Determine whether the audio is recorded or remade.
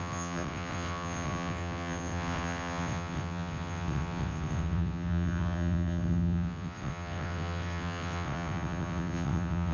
remade